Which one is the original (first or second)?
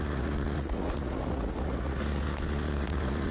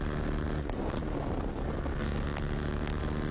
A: second